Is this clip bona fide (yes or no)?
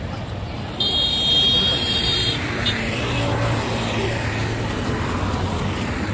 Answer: yes